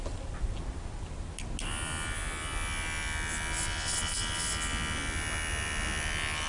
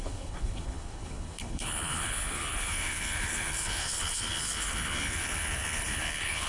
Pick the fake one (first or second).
second